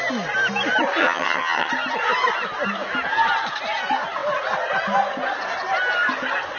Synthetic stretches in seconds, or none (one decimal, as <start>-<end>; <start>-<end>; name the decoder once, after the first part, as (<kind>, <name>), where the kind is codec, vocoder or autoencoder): 1.0-1.7 (vocoder, HiFi-GAN)